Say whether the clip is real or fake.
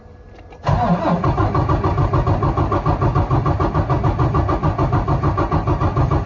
real